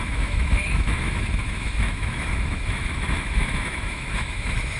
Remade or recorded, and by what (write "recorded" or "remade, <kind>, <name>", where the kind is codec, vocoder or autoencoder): remade, autoencoder, DAC-VAE